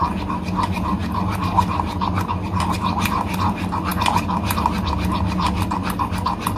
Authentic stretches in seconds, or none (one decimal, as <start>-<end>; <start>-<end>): 0.0-6.6